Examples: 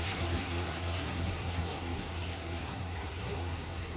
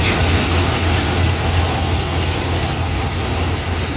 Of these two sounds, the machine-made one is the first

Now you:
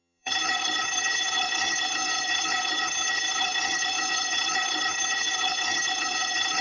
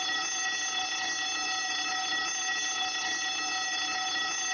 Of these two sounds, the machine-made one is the first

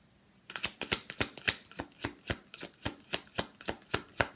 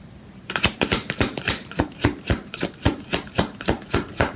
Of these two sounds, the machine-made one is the second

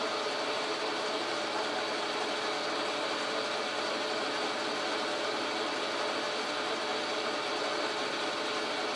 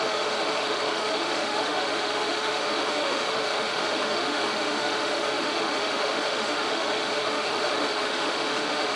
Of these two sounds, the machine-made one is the second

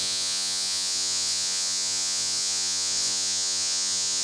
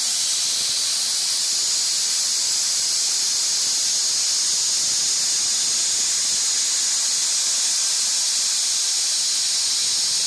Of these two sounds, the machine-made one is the first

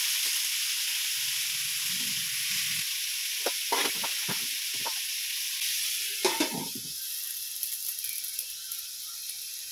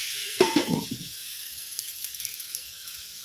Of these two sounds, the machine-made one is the second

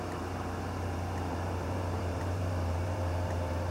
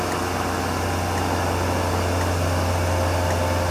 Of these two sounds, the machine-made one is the first